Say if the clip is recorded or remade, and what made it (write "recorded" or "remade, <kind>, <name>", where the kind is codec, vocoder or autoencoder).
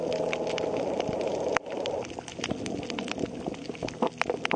recorded